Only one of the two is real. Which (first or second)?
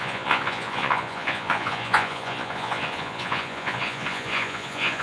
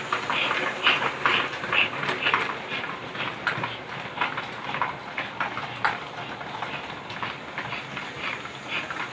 second